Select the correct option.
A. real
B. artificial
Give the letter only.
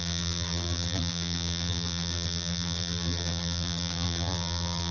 B